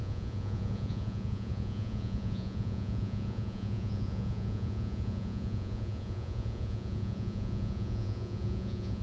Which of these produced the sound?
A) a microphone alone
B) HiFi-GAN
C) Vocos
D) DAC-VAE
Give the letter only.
C